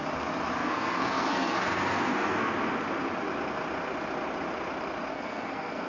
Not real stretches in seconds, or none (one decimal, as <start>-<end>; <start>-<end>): 0.6-2.5; 5.1-5.9